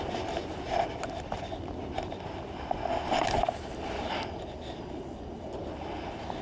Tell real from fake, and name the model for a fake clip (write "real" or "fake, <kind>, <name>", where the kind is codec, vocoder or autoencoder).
real